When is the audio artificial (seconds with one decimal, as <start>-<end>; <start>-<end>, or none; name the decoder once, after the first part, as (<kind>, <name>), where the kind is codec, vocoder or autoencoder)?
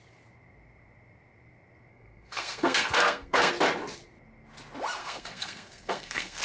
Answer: 1.9-3.5 (codec, SNAC); 5.0-6.4